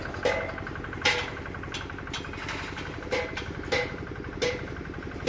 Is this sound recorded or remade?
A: recorded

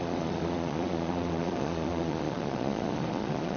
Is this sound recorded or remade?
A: remade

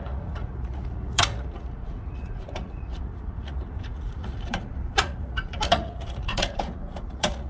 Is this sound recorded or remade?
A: remade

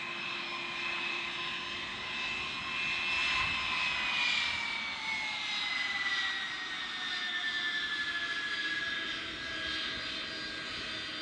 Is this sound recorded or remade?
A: recorded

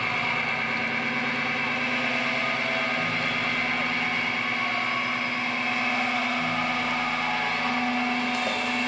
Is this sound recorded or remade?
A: recorded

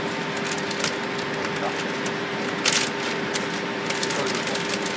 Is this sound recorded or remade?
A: recorded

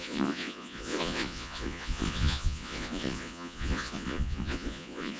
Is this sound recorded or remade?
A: remade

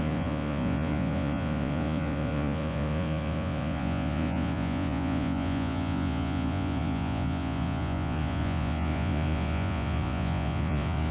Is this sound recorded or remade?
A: remade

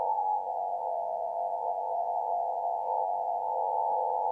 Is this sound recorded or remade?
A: remade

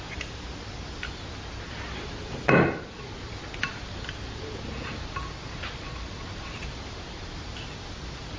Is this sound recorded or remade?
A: recorded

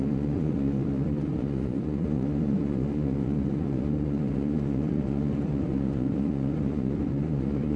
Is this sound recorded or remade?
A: remade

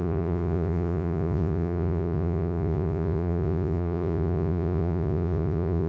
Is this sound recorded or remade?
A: remade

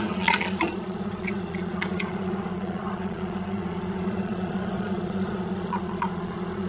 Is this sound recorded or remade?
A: remade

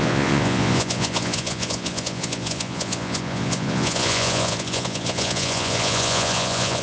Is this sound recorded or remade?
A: remade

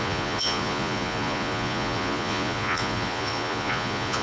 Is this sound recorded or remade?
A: remade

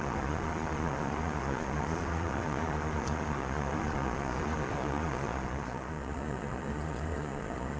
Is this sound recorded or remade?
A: remade